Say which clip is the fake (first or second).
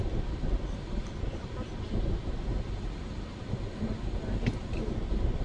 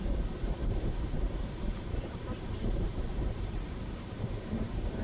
second